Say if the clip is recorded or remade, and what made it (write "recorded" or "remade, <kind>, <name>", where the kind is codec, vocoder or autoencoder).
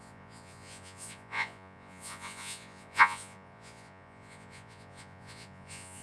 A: remade, vocoder, Vocos